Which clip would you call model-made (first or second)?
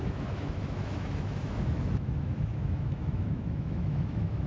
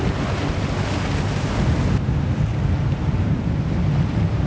first